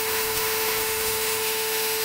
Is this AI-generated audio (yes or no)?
yes